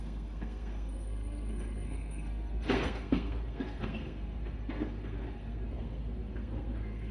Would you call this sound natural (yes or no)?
no